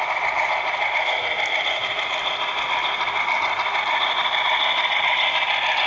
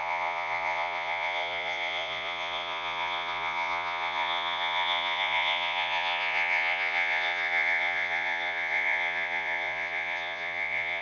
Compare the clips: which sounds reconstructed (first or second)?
second